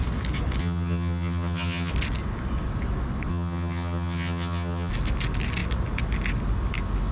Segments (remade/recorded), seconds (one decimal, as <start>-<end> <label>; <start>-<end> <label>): 0.0-0.6 recorded; 0.6-1.9 remade; 1.9-3.3 recorded; 3.3-4.9 remade; 4.9-7.1 recorded